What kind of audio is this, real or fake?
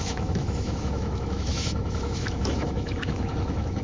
fake